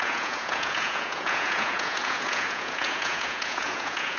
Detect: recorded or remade remade